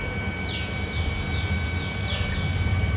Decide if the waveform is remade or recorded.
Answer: recorded